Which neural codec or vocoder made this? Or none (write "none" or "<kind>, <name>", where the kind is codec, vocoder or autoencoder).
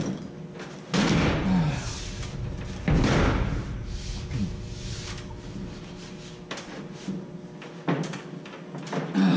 none